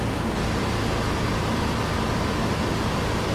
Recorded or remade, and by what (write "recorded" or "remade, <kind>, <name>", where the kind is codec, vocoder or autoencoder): recorded